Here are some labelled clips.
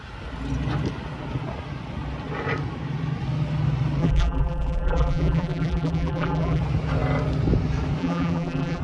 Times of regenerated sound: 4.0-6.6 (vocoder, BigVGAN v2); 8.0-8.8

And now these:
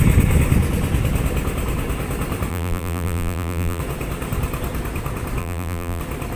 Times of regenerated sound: 2.5-3.8 (vocoder, BigVGAN v2); 5.4-6.0

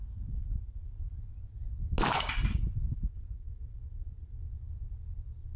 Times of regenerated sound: none

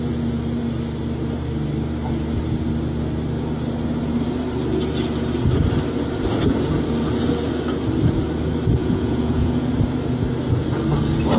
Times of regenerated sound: 8.8-9.7 (vocoder, Vocos)

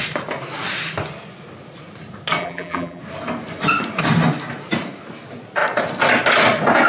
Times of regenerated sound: 2.4-3.0 (vocoder, BigVGAN v2)

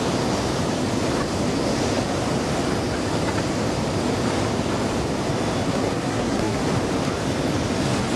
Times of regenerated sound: 5.7-6.6 (codec, SNAC)

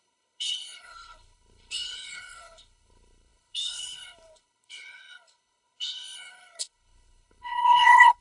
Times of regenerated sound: 0.0-8.2 (codec, HILCodec)

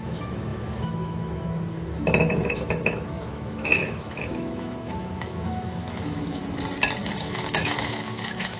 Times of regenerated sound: 0.0-6.4 (autoencoder, DAC-VAE); 7.0-8.6